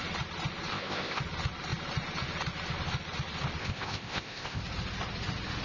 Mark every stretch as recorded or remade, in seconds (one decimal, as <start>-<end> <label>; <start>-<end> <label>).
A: 0.0-0.7 recorded; 0.7-1.2 remade; 1.2-3.6 recorded; 3.6-4.6 remade; 4.6-5.6 recorded